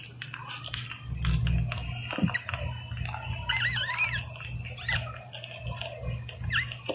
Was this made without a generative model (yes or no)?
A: yes